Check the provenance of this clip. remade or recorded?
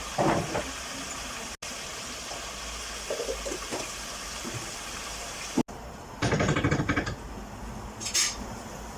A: recorded